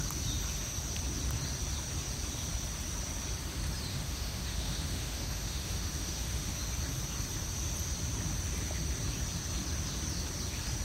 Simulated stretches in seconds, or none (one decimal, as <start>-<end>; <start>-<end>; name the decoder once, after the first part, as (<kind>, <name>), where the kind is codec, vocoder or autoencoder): 3.9-6.6 (autoencoder, DAC-VAE)